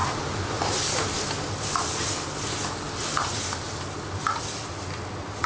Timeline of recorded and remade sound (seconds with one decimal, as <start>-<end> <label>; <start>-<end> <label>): 0.0-1.6 remade; 1.6-5.5 recorded